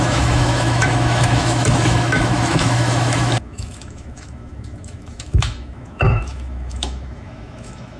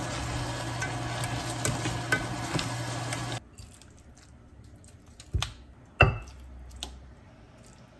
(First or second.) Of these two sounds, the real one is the second